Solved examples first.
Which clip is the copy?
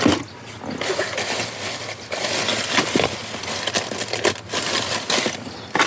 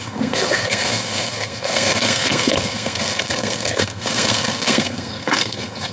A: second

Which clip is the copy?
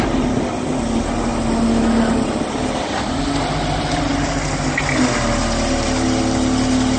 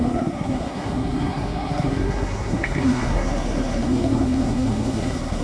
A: second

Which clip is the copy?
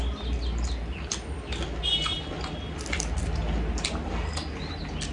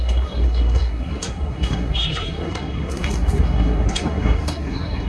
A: second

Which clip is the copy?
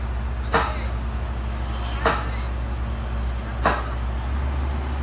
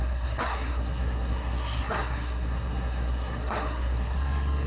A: second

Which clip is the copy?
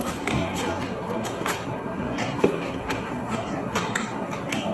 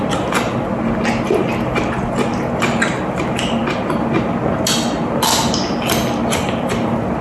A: first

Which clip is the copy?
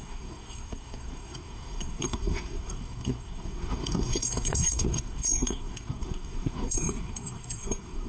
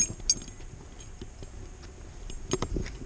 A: first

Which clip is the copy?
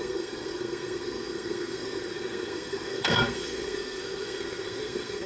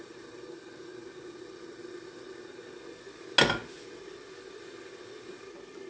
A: first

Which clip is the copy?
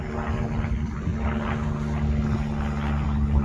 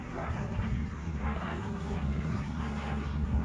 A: second